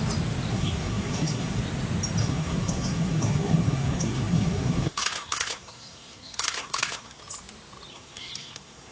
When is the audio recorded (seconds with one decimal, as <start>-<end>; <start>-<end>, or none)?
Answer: 0.0-0.5; 1.6-2.2; 7.2-7.9